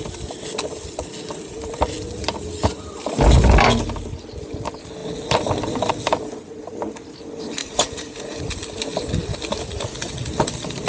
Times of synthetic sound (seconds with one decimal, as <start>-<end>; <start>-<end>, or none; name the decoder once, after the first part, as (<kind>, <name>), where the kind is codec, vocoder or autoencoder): 7.6-8.4 (vocoder, Vocos)